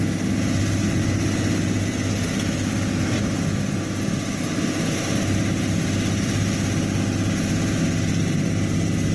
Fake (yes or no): no